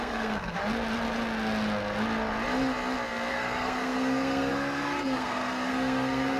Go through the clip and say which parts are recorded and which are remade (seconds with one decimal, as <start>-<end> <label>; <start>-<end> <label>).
0.0-0.6 remade; 0.6-3.3 recorded; 3.3-6.4 remade